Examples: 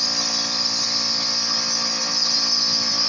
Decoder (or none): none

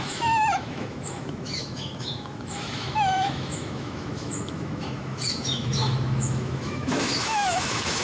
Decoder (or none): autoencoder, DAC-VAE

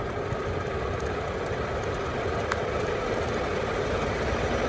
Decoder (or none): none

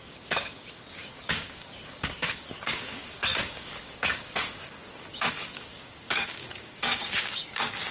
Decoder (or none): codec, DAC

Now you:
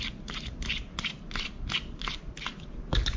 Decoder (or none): none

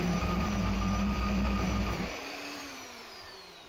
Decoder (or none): vocoder, BigVGAN v2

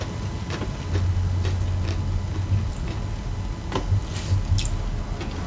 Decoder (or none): none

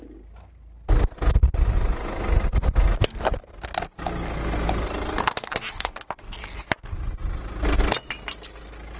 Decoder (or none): none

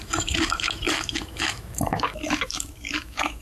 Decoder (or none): autoencoder, DAC-VAE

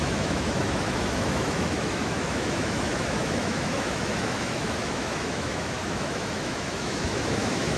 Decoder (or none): autoencoder, DAC-VAE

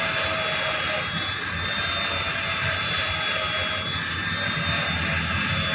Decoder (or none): none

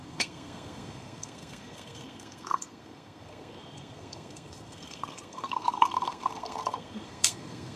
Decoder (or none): codec, SNAC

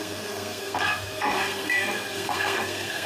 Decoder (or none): codec, SNAC